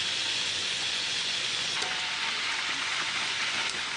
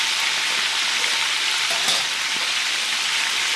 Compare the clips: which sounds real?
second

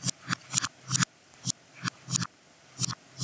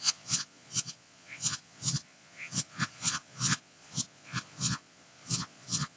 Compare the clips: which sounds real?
first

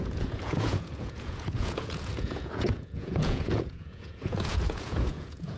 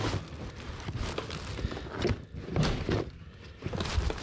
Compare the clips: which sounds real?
second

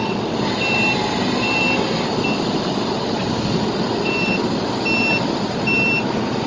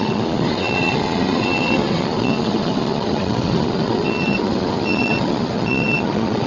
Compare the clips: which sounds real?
first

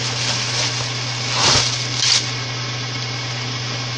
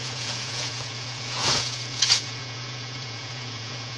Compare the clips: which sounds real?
first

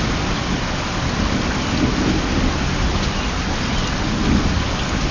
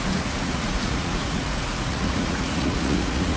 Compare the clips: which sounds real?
first